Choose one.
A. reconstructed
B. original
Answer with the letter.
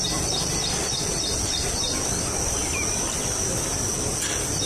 B